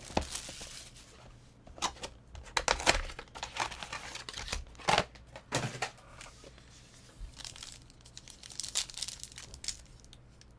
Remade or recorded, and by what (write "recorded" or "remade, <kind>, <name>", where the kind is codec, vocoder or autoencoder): recorded